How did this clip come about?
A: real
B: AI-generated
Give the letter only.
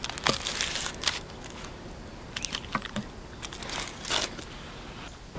A